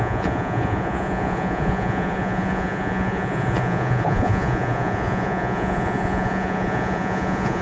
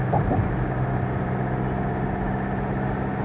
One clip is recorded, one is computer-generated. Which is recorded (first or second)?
second